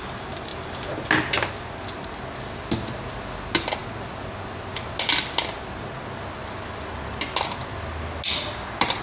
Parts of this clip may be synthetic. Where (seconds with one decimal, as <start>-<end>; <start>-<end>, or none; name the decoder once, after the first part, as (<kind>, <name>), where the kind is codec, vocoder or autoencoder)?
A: none